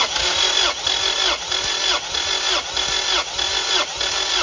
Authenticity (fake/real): real